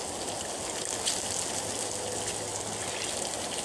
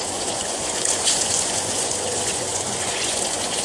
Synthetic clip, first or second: second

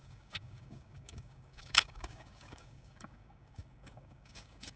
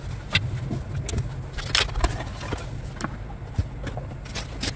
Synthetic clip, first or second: first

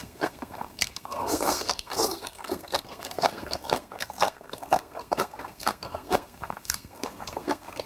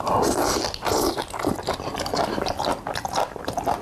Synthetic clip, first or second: first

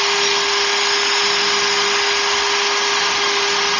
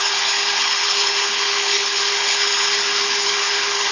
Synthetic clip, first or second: second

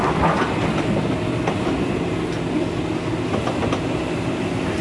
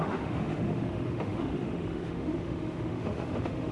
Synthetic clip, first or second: second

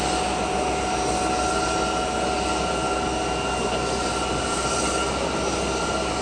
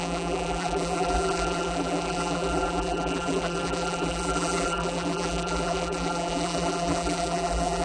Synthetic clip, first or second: second